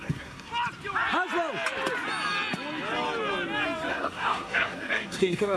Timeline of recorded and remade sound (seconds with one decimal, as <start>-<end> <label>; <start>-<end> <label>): 0.0-0.5 remade; 0.5-3.9 recorded; 3.9-5.6 remade